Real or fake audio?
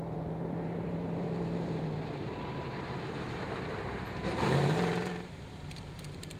fake